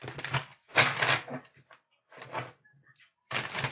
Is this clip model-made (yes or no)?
no